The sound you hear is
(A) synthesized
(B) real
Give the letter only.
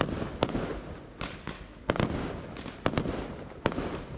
B